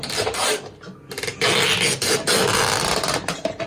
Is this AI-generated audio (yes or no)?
no